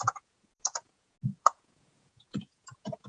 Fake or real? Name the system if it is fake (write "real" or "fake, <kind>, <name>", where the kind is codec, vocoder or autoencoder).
fake, vocoder, Vocos